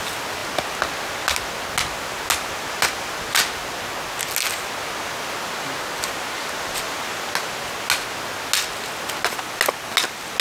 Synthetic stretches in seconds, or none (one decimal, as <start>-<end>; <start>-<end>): none

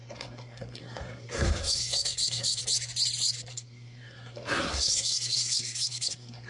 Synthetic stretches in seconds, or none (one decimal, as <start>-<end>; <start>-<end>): 0.0-2.6; 3.5-6.5

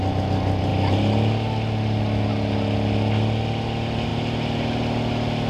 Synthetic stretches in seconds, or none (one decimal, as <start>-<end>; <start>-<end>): none

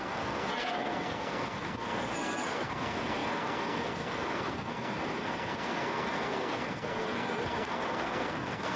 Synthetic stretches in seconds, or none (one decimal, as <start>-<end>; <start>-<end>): 0.0-8.8

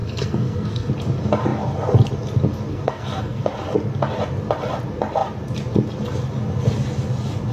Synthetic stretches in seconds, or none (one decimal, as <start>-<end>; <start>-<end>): 0.0-0.9; 2.7-3.5

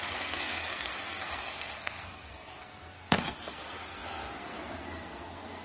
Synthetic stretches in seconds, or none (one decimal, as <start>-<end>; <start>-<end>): 0.0-5.6

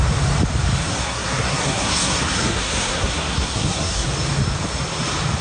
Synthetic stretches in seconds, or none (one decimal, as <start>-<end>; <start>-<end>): 0.9-4.1